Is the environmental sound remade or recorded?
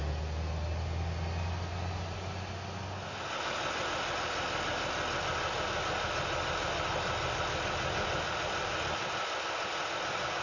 recorded